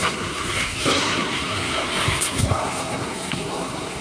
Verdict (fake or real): fake